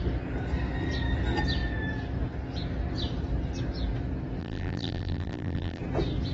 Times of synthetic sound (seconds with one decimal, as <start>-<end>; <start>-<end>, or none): 4.4-5.8